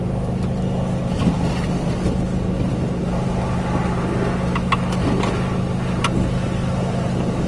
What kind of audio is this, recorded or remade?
recorded